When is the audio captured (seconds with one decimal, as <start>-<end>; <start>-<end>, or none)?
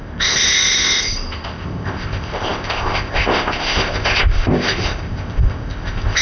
none